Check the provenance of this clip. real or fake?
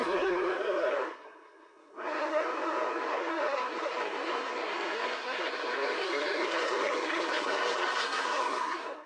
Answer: fake